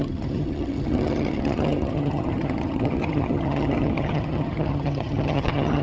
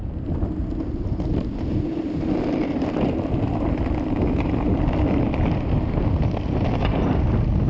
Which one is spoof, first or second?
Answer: first